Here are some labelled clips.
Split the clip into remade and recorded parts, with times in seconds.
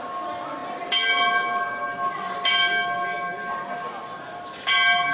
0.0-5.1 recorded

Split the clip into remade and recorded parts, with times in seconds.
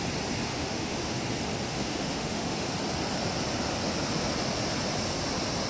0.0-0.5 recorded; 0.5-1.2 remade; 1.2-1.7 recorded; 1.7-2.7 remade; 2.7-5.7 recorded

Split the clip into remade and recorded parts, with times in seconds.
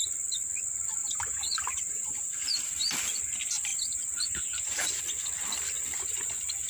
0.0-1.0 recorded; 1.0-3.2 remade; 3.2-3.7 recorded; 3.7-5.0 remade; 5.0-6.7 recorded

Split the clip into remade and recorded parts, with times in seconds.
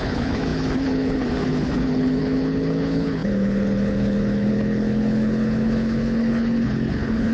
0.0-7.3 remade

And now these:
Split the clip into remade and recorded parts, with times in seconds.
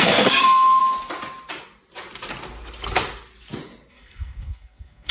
0.0-0.8 remade; 0.8-3.9 recorded; 3.9-5.1 remade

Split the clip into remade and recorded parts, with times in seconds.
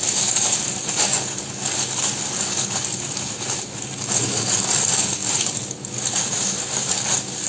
0.0-7.5 remade